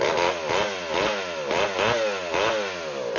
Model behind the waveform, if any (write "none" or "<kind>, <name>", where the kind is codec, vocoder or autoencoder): none